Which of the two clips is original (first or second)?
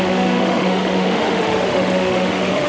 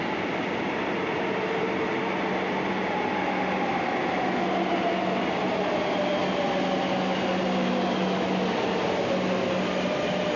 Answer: second